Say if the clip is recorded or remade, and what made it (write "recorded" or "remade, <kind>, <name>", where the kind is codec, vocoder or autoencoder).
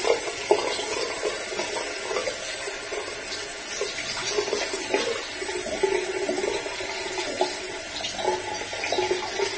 recorded